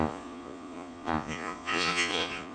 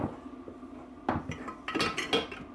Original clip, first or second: second